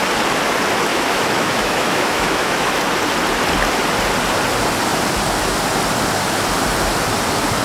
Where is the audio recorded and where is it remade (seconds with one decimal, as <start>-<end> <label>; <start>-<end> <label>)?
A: 0.0-0.9 recorded; 0.9-2.7 remade; 2.7-7.6 recorded